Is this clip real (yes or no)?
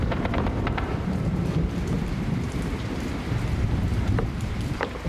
no